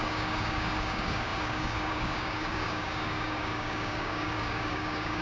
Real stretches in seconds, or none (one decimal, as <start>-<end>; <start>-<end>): none